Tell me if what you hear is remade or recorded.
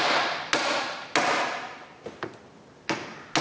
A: recorded